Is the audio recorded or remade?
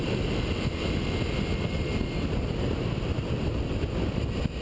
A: recorded